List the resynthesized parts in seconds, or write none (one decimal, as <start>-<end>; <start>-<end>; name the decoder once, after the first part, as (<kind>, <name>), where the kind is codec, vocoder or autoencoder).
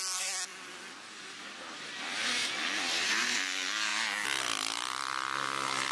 none